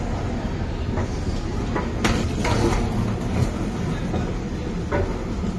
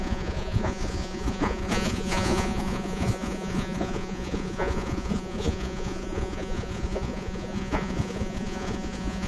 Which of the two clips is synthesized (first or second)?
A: second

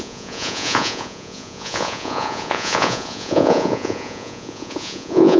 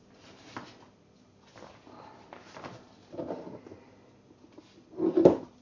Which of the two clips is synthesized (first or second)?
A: first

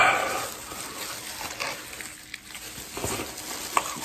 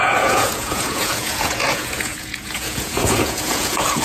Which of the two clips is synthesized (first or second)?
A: second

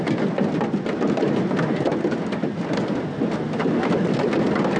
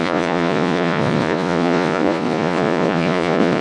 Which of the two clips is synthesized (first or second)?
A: second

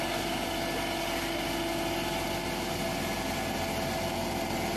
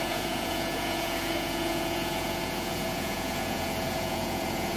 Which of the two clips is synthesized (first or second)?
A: second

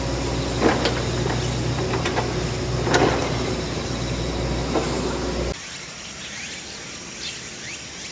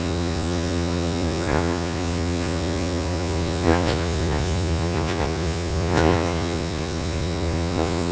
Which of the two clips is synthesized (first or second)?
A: second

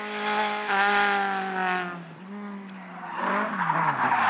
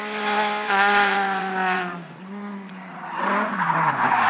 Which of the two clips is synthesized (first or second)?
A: second